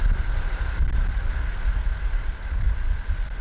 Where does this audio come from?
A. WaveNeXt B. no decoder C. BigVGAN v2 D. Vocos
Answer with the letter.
B